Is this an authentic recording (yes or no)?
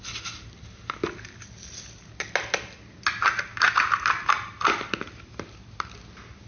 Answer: yes